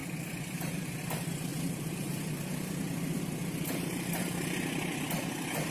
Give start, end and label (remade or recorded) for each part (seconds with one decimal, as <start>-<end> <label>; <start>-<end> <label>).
0.0-1.0 remade; 1.0-1.5 recorded; 1.5-3.2 remade; 3.2-5.7 recorded